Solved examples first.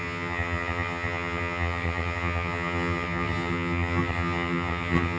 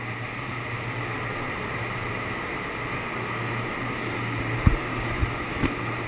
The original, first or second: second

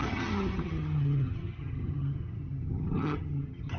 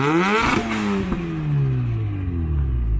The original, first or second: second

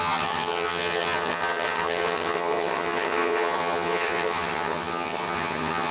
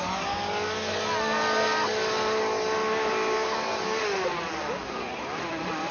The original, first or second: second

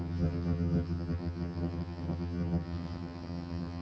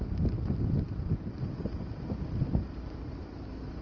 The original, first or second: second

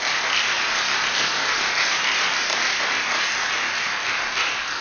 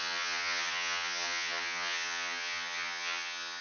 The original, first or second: first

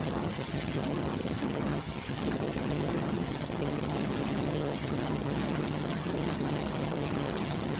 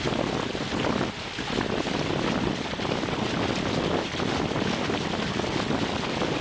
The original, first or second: second